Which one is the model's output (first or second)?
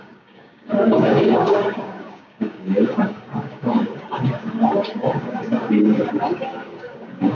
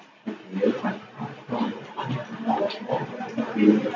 first